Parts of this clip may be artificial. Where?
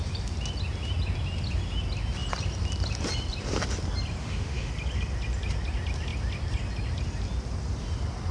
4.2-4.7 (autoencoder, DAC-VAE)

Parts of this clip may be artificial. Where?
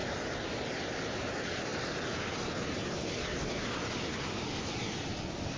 0.8-5.6 (vocoder, BigVGAN v2)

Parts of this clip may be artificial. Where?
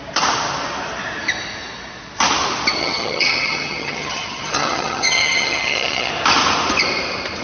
2.8-6.1 (vocoder, HiFi-GAN)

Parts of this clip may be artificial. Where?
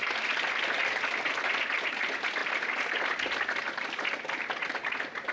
0.8-1.6 (vocoder, BigVGAN v2); 2.4-4.4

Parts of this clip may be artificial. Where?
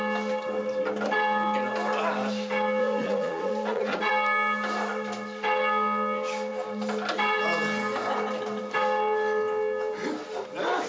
2.8-4.1 (vocoder, Vocos)